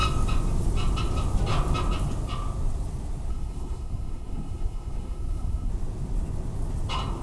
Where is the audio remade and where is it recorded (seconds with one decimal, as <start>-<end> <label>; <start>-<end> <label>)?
0.0-3.3 recorded; 3.3-5.7 remade; 5.7-7.2 recorded